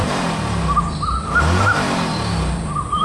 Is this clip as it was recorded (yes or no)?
yes